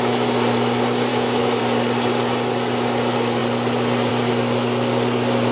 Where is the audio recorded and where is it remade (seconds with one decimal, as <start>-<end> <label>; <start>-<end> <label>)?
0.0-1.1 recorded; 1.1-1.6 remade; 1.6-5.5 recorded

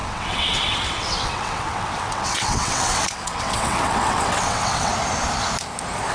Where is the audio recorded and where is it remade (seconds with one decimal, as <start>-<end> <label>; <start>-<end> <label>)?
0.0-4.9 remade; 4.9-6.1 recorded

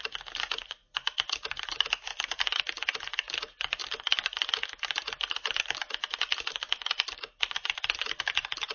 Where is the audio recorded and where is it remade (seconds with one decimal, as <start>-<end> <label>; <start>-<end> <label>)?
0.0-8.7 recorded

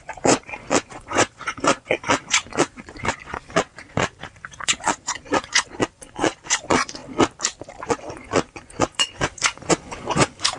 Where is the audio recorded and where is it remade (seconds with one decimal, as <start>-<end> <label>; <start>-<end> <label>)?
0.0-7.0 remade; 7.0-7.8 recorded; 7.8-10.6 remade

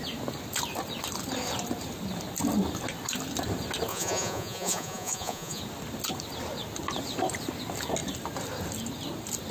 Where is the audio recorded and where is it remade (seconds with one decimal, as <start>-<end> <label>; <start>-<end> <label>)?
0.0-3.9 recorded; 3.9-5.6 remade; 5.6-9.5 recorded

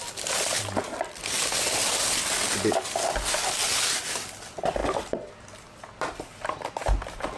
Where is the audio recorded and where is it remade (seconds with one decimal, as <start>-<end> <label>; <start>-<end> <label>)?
0.0-7.4 recorded

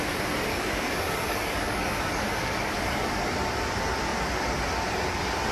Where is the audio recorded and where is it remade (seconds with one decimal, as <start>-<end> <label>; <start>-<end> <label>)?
0.0-0.5 recorded; 0.5-3.2 remade; 3.2-5.5 recorded